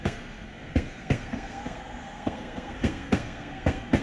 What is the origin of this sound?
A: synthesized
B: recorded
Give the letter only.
A